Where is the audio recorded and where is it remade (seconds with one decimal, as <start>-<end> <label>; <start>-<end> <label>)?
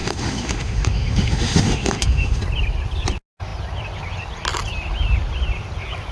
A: 0.0-2.4 remade; 2.4-6.1 recorded